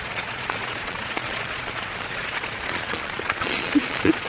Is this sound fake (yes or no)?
yes